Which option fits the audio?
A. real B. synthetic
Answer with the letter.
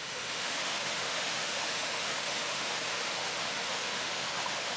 B